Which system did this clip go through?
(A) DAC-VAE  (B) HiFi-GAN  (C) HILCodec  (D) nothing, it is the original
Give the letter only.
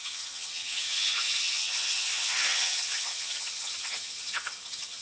B